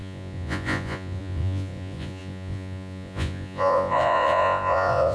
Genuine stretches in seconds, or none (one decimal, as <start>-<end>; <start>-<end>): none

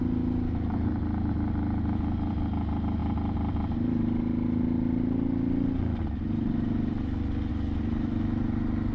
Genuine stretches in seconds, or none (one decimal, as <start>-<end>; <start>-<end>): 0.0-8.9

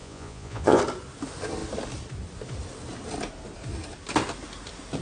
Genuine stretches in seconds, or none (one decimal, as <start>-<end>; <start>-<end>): 0.8-5.0